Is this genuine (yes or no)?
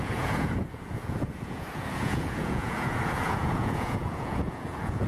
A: no